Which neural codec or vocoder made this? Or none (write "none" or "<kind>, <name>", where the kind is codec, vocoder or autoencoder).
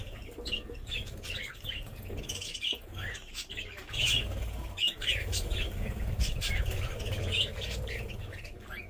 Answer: codec, DAC